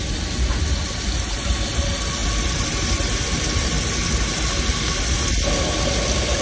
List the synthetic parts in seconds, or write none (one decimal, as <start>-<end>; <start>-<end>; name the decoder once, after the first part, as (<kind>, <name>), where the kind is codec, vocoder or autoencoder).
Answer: none